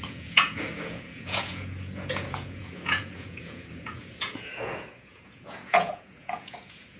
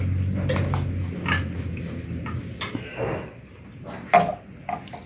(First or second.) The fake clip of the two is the first